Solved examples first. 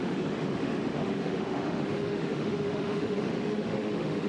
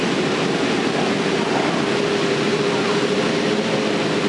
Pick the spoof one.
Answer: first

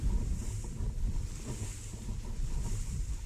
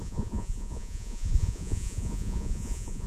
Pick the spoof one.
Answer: second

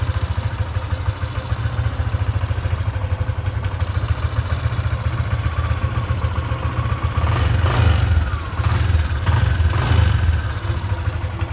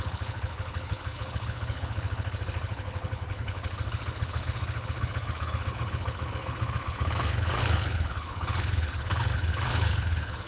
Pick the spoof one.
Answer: second